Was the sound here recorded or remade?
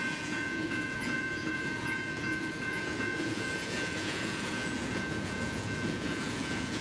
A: remade